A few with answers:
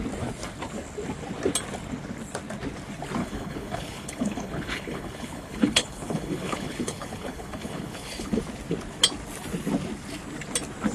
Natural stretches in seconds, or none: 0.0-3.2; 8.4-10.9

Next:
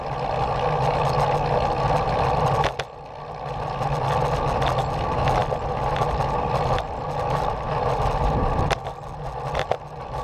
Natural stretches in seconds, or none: 0.0-10.2

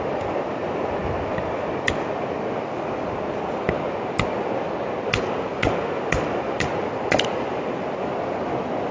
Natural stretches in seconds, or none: 0.0-8.9

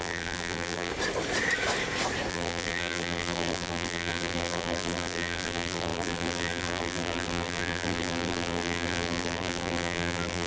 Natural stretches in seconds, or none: 0.9-2.3